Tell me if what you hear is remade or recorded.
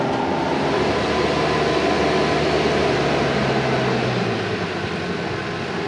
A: recorded